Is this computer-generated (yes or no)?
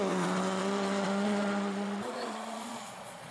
yes